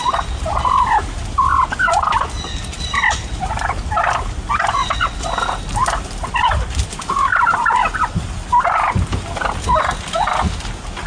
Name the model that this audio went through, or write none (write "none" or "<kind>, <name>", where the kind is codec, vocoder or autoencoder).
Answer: none